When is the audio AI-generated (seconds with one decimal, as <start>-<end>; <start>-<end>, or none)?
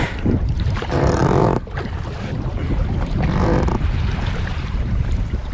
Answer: 0.0-1.2; 4.5-5.5